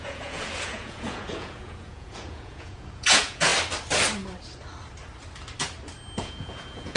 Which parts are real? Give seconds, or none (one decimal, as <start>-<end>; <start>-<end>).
3.5-6.2